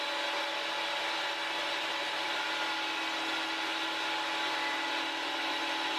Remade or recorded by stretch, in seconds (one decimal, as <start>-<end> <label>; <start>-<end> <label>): 0.0-1.6 recorded; 1.6-2.5 remade; 2.5-6.0 recorded